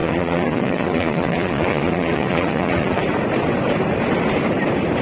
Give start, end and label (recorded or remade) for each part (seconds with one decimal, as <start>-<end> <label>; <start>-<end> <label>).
0.0-3.0 remade; 3.0-5.0 recorded